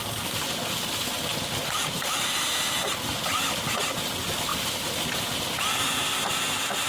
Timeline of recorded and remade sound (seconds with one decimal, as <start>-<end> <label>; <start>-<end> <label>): 0.0-6.9 recorded